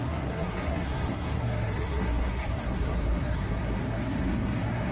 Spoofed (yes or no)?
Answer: yes